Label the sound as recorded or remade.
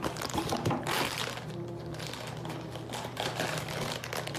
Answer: remade